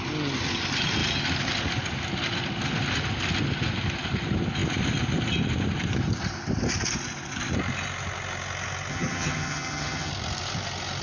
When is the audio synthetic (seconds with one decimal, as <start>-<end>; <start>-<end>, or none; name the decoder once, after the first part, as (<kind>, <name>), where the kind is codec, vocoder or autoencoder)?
8.9-10.1 (vocoder, HiFi-GAN)